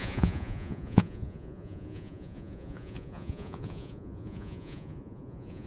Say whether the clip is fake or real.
fake